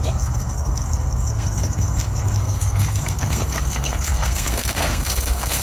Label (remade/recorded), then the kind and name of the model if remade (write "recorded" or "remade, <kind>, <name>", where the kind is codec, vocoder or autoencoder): remade, codec, SNAC